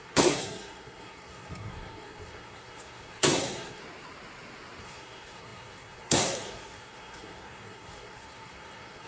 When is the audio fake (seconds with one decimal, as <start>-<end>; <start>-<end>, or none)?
0.0-3.8; 4.8-9.1